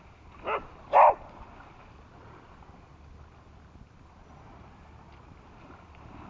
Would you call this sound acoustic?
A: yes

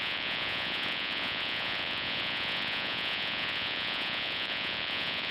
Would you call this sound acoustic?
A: no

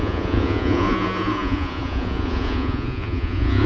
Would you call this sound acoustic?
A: no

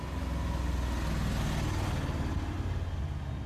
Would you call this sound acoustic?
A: yes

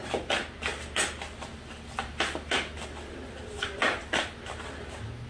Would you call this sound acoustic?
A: yes